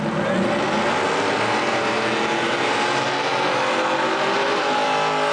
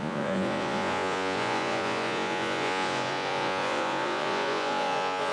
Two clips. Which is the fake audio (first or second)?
second